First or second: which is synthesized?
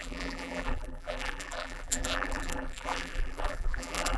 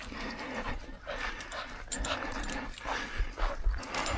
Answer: first